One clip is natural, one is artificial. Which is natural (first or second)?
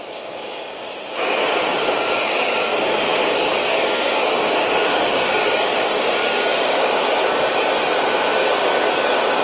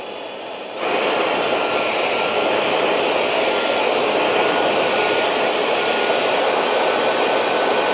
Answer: second